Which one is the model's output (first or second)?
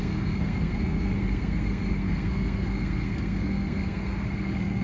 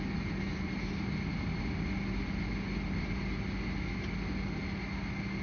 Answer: first